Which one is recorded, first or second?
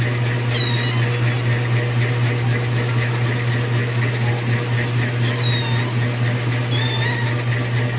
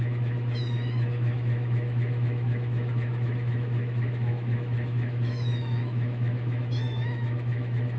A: first